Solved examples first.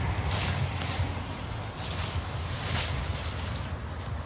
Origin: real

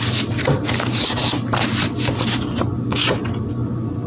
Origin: real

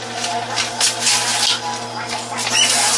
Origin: real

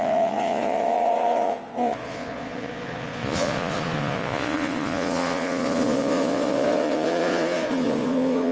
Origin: fake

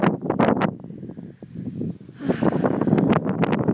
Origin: real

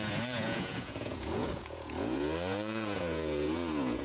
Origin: fake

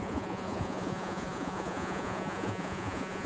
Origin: fake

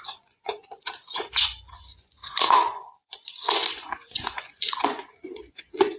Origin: fake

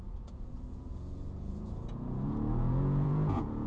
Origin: fake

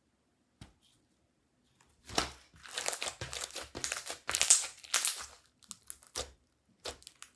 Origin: real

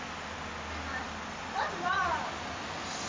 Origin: real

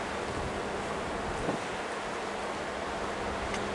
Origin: real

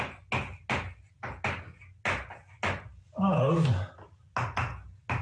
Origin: real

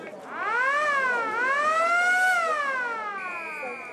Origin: real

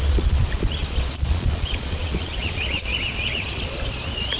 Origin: fake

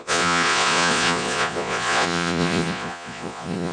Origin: fake